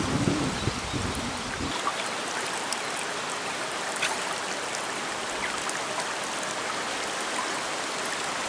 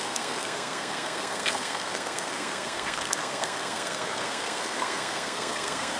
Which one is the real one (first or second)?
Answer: first